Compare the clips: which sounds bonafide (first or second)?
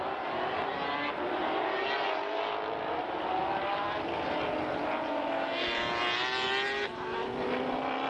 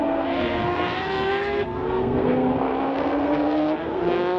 first